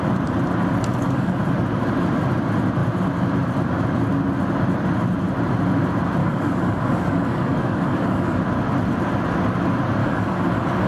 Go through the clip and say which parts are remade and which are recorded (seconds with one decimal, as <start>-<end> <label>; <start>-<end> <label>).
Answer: 0.0-0.9 recorded; 0.9-1.4 remade; 1.4-6.2 recorded; 6.2-8.4 remade; 8.4-10.0 recorded; 10.0-10.9 remade